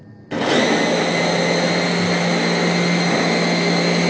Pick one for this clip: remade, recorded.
recorded